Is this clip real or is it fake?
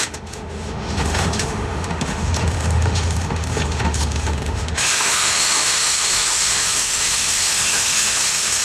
fake